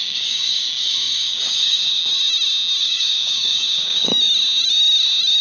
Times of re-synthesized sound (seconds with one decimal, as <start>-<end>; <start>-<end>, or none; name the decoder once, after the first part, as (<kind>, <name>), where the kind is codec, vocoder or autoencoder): 0.0-2.0 (codec, DAC); 2.8-4.1